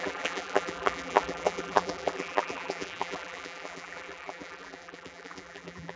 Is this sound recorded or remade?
remade